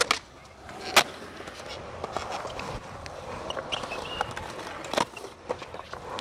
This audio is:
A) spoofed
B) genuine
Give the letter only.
B